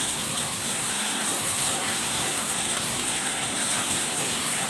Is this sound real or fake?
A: fake